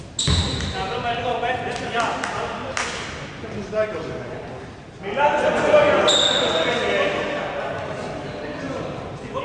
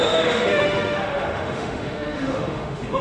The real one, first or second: first